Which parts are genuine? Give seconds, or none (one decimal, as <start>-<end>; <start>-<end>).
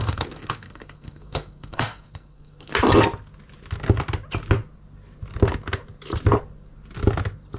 2.7-7.6